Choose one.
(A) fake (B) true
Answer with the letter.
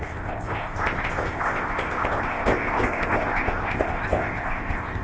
A